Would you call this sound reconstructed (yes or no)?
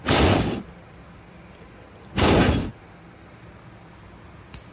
no